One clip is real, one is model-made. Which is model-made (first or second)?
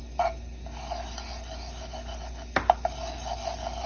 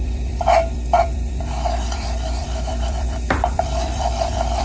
second